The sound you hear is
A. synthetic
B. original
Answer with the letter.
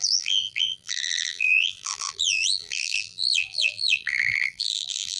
A